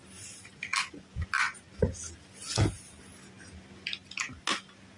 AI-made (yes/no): no